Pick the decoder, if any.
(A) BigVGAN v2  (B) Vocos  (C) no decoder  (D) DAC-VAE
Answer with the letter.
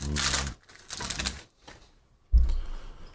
C